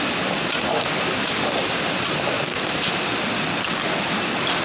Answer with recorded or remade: recorded